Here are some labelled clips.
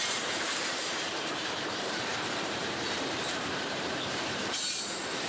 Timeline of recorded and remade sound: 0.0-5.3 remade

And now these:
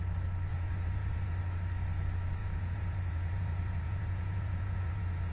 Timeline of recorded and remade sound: 0.0-0.5 recorded; 0.5-1.4 remade; 1.4-2.4 recorded; 2.4-5.3 remade